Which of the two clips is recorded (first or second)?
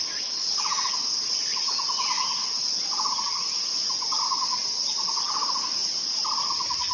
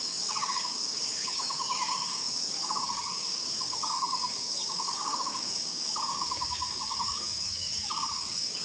first